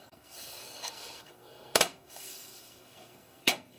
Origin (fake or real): fake